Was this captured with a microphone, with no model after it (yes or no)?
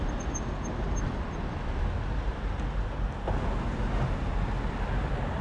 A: yes